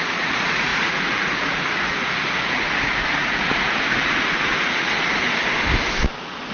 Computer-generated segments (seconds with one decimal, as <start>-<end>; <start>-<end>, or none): 0.0-5.3